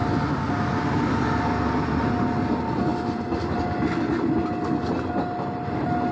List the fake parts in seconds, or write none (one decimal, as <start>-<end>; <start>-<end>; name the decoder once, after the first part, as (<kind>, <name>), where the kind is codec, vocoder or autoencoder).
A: none